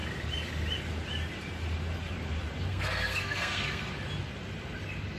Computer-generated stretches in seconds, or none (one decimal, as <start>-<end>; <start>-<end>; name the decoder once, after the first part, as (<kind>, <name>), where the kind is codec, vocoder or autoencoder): 2.7-3.9 (codec, SNAC)